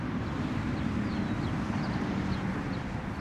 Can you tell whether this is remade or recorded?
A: recorded